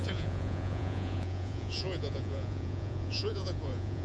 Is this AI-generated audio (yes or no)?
yes